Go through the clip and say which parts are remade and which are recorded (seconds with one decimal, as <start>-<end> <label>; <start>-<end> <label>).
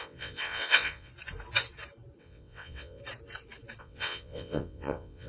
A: 0.0-1.1 remade; 1.1-2.2 recorded; 2.2-3.0 remade; 3.0-3.8 recorded; 3.8-5.3 remade